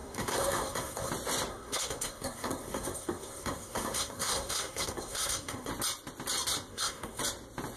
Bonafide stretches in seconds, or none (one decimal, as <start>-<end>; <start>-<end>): 1.1-1.5; 5.7-6.7; 7.2-7.8